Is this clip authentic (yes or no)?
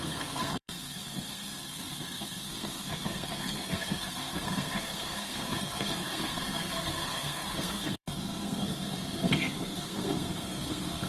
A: no